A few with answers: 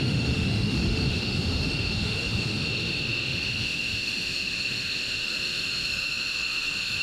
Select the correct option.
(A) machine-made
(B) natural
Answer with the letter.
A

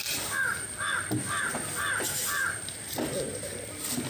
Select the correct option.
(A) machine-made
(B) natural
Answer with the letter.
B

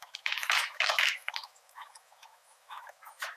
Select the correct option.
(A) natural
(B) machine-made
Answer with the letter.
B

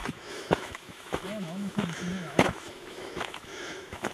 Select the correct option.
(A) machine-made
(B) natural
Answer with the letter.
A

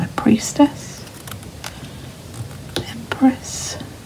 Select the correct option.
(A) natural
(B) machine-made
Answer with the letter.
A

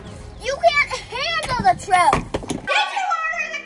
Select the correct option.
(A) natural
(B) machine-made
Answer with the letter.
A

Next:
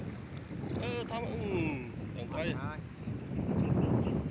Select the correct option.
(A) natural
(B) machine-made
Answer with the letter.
A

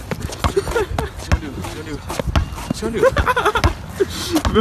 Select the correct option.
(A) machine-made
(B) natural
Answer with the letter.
B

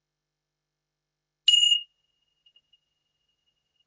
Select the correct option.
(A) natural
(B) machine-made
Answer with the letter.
A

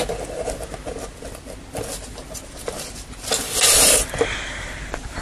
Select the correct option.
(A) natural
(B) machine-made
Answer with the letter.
A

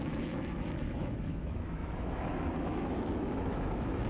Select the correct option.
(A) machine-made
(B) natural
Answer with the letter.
A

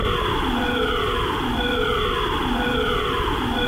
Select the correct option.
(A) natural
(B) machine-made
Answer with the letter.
A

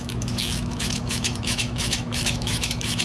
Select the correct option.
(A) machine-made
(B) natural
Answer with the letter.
A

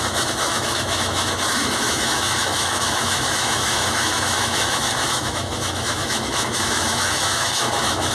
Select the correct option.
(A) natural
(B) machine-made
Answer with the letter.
B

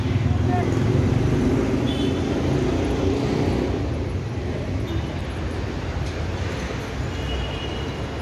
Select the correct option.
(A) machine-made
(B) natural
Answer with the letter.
B